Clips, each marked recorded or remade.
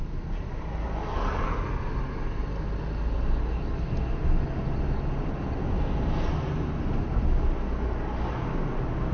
recorded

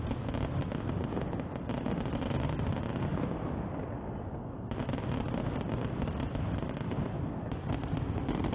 recorded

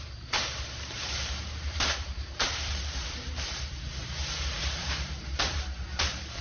remade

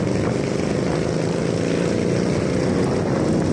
recorded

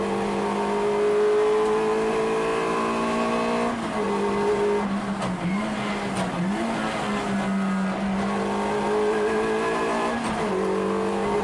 recorded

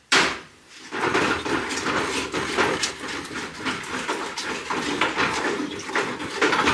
remade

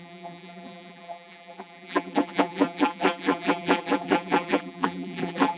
remade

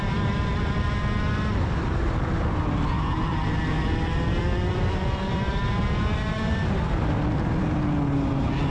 recorded